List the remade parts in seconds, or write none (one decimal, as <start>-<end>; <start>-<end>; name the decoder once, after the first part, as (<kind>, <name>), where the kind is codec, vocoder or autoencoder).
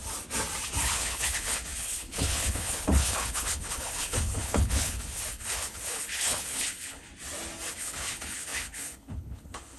0.8-7.1 (codec, HILCodec); 7.7-9.8